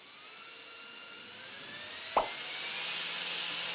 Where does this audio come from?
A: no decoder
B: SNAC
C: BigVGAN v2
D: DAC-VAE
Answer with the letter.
A